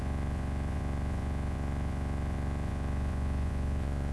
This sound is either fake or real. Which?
fake